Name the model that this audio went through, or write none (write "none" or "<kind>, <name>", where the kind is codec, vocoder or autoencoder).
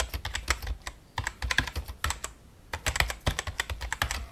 none